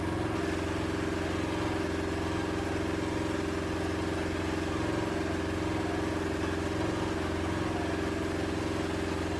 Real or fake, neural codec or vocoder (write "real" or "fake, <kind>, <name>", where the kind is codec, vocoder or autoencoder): real